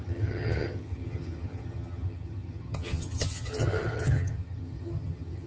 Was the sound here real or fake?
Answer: fake